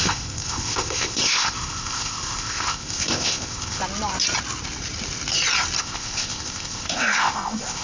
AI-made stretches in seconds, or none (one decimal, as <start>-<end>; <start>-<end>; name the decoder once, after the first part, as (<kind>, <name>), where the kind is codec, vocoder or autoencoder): 0.0-3.8 (codec, ZipCodec); 5.8-7.8